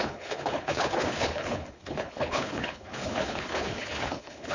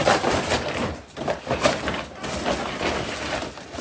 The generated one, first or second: first